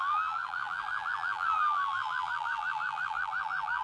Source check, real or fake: fake